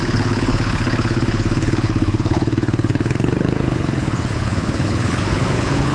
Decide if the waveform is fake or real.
fake